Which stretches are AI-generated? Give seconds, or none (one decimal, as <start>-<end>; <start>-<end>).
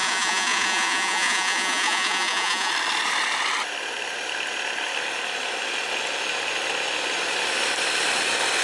0.0-2.7